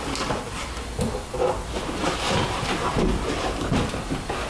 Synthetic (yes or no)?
no